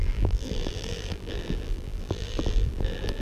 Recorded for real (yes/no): no